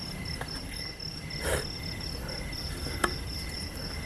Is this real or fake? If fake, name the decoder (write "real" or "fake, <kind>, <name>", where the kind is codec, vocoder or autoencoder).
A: real